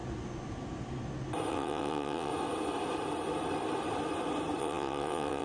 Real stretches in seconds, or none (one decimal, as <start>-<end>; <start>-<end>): 0.0-1.5; 2.3-4.6